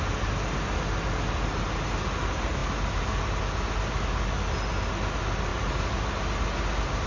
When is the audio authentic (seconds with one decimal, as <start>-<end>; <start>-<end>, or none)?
0.0-7.1